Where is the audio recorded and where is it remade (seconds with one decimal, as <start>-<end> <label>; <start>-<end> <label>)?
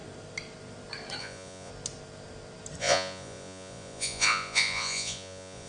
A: 0.0-1.2 recorded; 1.2-1.7 remade; 1.7-2.8 recorded; 2.8-5.7 remade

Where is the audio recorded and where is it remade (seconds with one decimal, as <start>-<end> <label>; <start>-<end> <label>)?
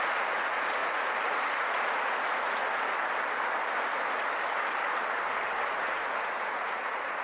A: 0.0-2.6 remade; 2.6-5.7 recorded; 5.7-7.2 remade